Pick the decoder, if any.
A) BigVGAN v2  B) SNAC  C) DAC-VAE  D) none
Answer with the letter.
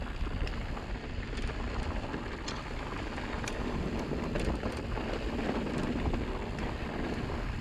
D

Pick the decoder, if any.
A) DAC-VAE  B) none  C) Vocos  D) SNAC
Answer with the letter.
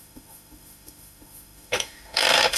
A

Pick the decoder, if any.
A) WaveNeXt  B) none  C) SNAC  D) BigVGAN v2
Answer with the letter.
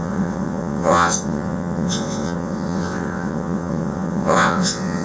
A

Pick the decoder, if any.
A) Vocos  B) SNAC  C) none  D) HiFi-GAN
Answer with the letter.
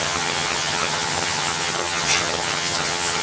D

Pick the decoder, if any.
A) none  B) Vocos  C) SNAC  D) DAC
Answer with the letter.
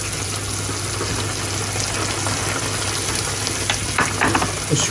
A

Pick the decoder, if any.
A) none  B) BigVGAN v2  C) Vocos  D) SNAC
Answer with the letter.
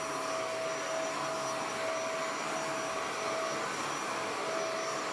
A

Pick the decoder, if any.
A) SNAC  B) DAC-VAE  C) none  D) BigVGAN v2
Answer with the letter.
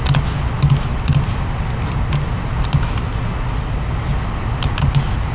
C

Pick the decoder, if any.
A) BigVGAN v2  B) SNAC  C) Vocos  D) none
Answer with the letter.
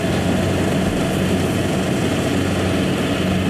D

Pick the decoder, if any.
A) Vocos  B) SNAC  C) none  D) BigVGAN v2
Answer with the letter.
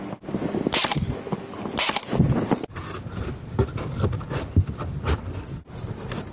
C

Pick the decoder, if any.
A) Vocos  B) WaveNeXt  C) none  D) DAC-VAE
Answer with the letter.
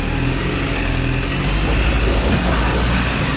C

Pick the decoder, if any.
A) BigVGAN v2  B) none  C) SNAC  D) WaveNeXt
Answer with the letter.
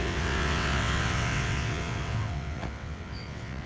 D